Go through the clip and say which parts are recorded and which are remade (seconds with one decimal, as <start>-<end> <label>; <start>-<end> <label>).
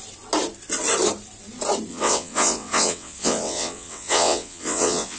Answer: 0.0-1.9 recorded; 1.9-5.2 remade